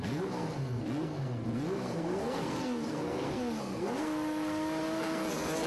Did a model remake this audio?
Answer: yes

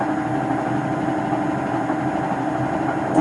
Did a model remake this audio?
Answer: no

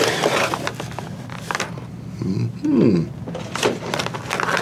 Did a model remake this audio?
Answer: no